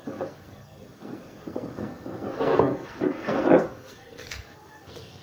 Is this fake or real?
fake